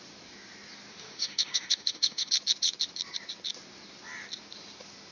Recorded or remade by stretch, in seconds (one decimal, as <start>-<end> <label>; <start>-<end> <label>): 0.0-0.9 recorded; 0.9-2.3 remade; 2.3-5.1 recorded